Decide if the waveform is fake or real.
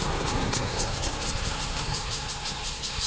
fake